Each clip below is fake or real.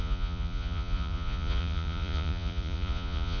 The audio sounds fake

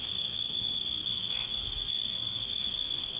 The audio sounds fake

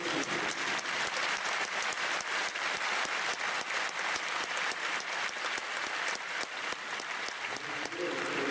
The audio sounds real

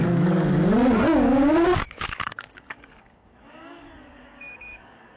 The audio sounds fake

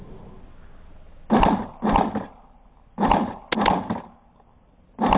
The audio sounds real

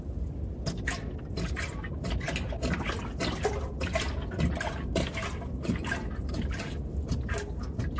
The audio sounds real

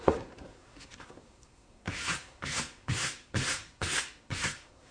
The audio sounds fake